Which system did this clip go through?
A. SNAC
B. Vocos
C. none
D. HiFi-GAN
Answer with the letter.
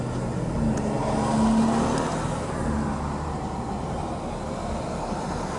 C